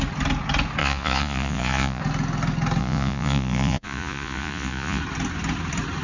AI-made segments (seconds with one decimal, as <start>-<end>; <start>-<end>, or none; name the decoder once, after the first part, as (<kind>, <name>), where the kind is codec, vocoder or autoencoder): 0.8-2.0 (vocoder, Vocos); 2.8-5.0